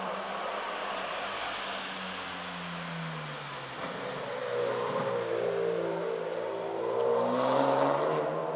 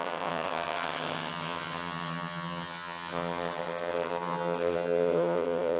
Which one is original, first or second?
first